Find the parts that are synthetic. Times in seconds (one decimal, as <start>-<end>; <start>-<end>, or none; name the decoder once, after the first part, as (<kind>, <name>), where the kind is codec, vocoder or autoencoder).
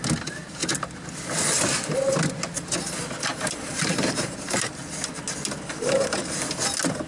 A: 3.3-4.7 (vocoder, BigVGAN v2)